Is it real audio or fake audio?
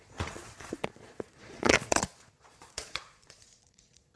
fake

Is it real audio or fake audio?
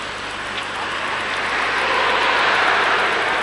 real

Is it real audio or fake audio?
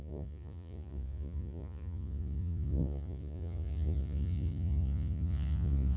fake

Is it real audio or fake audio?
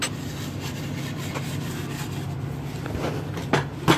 real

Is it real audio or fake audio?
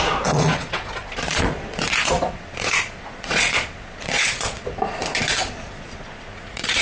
fake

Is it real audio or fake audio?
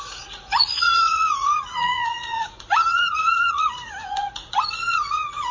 fake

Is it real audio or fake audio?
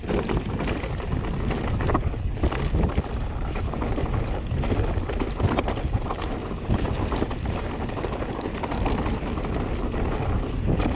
real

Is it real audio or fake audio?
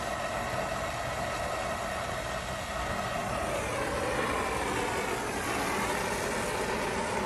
real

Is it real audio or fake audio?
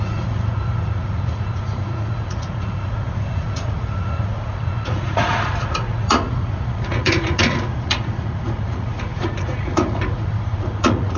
fake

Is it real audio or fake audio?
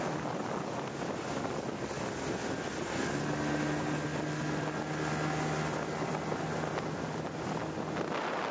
real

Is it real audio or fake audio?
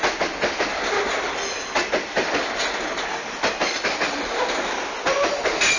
real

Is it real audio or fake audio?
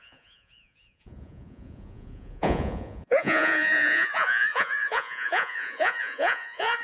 fake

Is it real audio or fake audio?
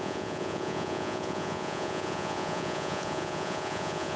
fake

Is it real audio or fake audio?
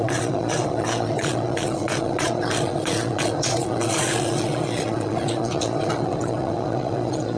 fake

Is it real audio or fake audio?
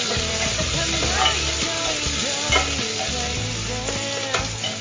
real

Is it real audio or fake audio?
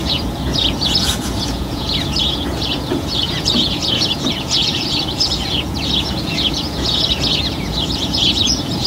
fake